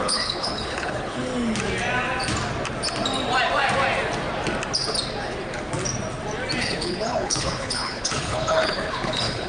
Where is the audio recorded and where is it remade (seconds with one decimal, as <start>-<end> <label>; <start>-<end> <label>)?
0.0-1.3 remade; 1.3-6.6 recorded; 6.6-9.5 remade